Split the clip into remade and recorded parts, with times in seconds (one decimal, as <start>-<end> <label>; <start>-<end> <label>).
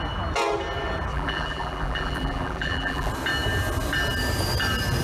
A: 0.0-1.1 recorded; 1.1-3.1 remade; 3.1-5.0 recorded